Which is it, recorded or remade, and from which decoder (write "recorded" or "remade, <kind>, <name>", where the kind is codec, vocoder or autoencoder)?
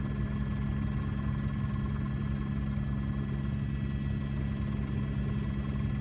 recorded